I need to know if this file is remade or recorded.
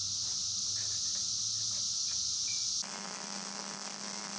recorded